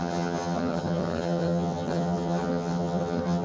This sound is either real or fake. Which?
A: fake